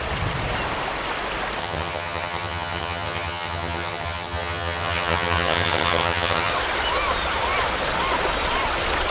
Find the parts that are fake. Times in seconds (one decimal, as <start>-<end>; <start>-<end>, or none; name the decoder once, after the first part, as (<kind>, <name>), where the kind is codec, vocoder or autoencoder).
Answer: 1.6-6.5 (vocoder, HiFi-GAN)

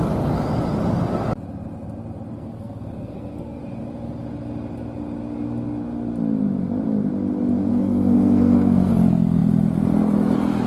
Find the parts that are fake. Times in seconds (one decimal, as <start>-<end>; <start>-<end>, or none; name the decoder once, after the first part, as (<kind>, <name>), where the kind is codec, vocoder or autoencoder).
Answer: 2.3-3.6 (codec, SNAC); 7.7-8.9

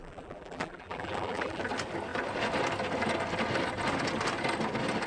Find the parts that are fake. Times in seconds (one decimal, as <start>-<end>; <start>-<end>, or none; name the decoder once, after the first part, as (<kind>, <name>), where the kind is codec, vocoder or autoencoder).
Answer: 0.0-1.6 (vocoder, BigVGAN v2)